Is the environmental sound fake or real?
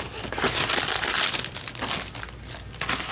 real